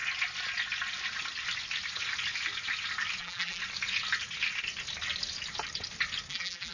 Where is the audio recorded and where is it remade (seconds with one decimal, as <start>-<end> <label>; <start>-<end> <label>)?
0.0-3.2 recorded; 3.2-3.6 remade; 3.6-6.3 recorded; 6.3-6.7 remade